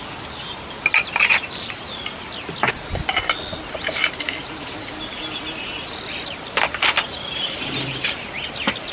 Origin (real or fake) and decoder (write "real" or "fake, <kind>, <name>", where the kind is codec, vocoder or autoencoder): real